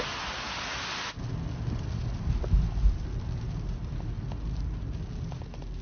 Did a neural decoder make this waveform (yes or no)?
no